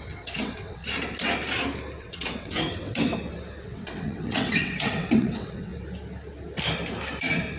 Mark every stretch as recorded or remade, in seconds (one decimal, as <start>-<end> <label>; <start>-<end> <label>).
0.0-0.8 remade; 0.8-2.0 recorded; 2.0-3.1 remade; 3.1-3.6 recorded; 3.6-5.7 remade; 5.7-7.6 recorded